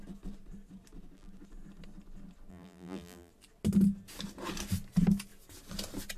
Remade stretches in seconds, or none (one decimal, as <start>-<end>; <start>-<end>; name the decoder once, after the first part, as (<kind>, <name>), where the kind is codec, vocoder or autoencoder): 2.5-3.3 (vocoder, BigVGAN v2)